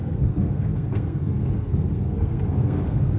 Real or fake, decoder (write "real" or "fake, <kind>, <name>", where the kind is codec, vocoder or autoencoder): fake, codec, SNAC